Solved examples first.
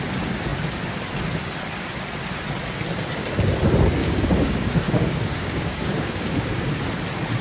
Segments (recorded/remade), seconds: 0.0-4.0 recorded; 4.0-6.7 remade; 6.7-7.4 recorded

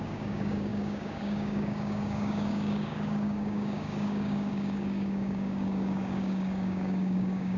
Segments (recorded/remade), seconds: 0.0-7.6 remade

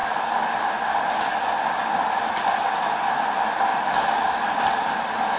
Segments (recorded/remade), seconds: 0.0-5.4 recorded

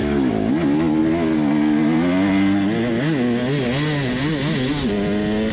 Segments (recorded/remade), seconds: 0.0-0.5 remade; 0.5-5.5 recorded

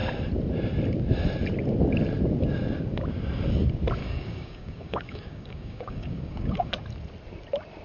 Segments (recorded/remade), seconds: 0.0-4.0 recorded; 4.0-6.7 remade; 6.7-7.8 recorded